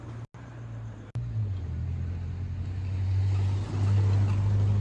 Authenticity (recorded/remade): recorded